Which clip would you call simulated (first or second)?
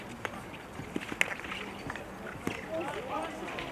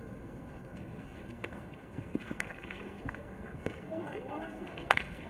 second